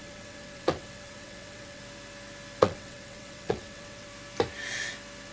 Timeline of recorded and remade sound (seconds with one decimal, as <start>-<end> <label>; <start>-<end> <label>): 0.0-1.8 remade; 1.8-2.6 recorded; 2.6-4.1 remade; 4.1-5.3 recorded